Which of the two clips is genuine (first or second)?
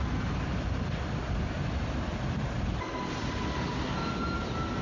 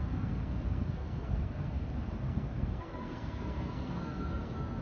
first